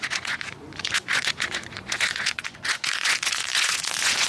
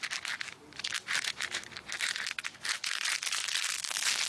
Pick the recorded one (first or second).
second